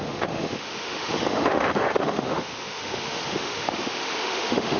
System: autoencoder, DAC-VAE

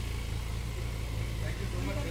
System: none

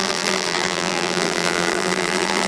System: vocoder, BigVGAN v2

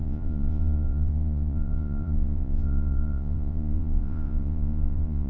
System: vocoder, Vocos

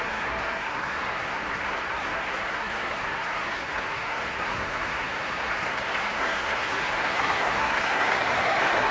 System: codec, SNAC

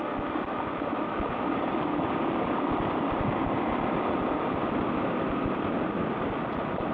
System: none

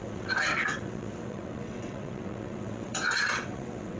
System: vocoder, WaveNeXt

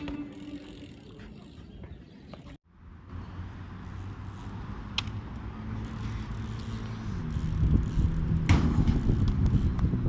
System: none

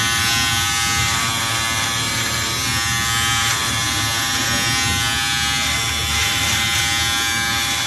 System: none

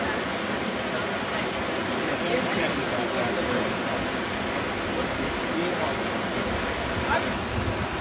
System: none